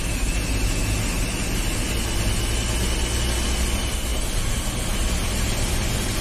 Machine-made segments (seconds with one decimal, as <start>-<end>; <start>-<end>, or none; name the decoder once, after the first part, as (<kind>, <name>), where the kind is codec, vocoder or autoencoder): none